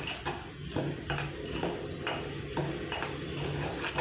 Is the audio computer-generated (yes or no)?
no